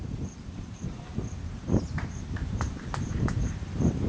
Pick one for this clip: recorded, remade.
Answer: remade